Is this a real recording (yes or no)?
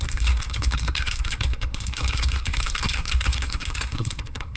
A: no